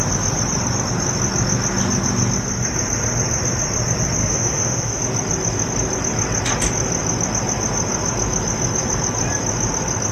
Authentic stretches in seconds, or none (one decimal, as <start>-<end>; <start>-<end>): 0.0-4.2; 5.0-10.1